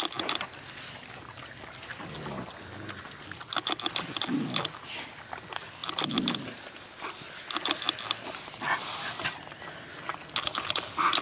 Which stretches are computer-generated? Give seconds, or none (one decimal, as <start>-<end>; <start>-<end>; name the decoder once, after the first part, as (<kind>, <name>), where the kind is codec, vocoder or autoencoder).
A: none